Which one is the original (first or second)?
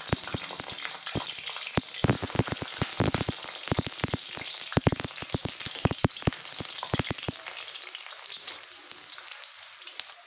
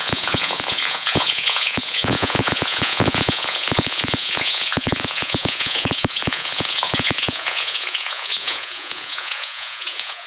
first